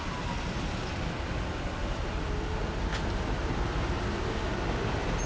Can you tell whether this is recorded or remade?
recorded